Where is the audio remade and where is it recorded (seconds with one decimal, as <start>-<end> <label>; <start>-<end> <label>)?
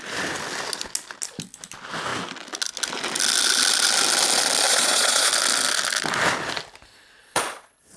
0.0-4.7 recorded; 4.7-5.3 remade; 5.3-7.2 recorded; 7.2-8.0 remade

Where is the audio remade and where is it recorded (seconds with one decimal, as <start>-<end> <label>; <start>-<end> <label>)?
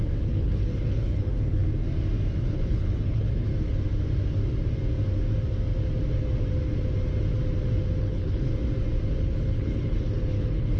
0.0-1.6 remade; 1.6-2.4 recorded; 2.4-3.5 remade; 3.5-8.0 recorded; 8.0-8.5 remade; 8.5-9.2 recorded; 9.2-10.8 remade